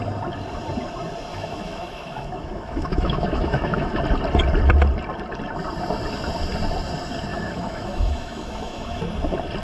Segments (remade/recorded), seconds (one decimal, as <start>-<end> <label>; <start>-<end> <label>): 0.0-1.3 recorded; 1.3-4.0 remade; 4.0-7.3 recorded; 7.3-9.0 remade; 9.0-9.6 recorded